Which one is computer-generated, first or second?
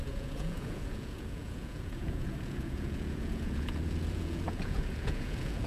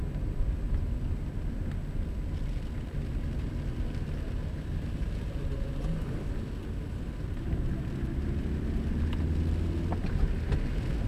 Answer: first